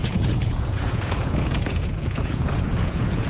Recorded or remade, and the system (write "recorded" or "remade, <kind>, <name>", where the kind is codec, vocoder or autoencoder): remade, vocoder, Vocos